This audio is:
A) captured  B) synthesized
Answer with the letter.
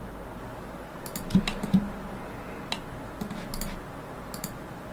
A